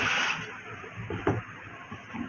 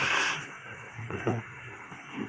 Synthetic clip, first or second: second